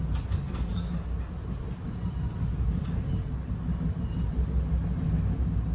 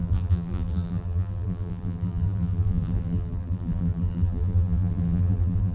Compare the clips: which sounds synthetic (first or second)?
second